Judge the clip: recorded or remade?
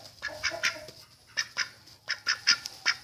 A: recorded